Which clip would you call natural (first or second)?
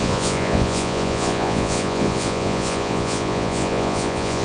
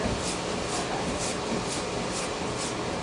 second